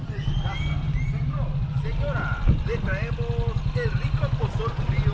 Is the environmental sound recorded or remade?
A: recorded